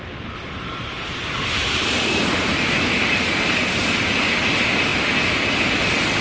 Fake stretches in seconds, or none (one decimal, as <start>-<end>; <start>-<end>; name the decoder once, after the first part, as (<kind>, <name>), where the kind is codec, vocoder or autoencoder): 1.6-3.7 (vocoder, BigVGAN v2)